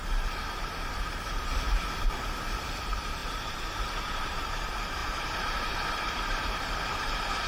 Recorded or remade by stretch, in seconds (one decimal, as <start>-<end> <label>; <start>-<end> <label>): 0.0-1.5 remade; 1.5-2.8 recorded; 2.8-7.5 remade